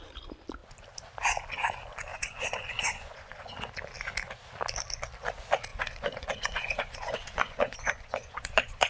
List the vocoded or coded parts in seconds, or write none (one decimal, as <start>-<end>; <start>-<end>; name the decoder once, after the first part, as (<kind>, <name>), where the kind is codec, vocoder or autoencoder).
2.1-3.7 (vocoder, Vocos); 5.7-8.9